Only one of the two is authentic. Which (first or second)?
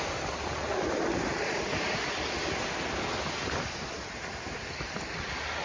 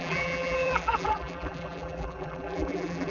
first